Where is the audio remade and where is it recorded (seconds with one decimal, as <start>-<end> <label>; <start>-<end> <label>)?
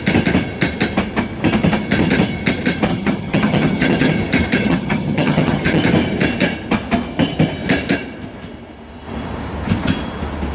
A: 0.0-2.9 recorded; 2.9-4.1 remade; 4.1-4.6 recorded; 4.6-5.8 remade; 5.8-10.5 recorded